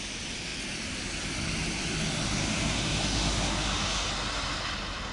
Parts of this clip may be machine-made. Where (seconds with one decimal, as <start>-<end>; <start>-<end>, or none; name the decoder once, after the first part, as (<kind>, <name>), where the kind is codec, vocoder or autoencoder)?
2.4-4.1 (autoencoder, DAC-VAE)

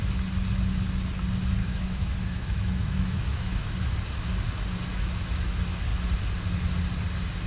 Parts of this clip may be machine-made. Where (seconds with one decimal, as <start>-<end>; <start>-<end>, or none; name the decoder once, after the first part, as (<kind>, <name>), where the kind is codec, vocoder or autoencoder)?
1.6-3.9 (autoencoder, DAC-VAE); 4.9-5.4

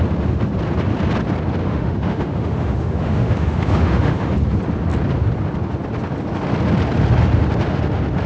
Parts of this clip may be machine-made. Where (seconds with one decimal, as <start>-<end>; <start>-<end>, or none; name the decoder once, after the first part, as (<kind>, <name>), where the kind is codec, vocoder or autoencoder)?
1.6-4.3 (autoencoder, DAC-VAE)

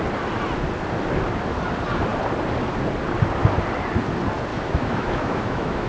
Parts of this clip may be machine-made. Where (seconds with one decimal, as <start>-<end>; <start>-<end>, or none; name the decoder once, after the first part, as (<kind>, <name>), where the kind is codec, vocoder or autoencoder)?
4.5-5.9 (autoencoder, DAC-VAE)

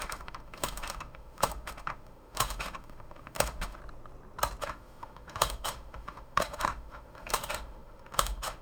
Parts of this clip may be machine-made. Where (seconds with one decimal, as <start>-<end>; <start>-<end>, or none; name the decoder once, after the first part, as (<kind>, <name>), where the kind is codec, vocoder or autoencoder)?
0.0-3.8 (autoencoder, DAC-VAE); 4.6-8.6

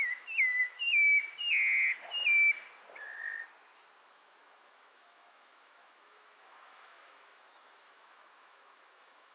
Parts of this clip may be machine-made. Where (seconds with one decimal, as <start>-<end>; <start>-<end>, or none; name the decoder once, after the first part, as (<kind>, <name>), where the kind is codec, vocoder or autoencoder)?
0.0-1.2 (autoencoder, DAC-VAE); 4.0-9.3